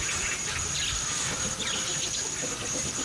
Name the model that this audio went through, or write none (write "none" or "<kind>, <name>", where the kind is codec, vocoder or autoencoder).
none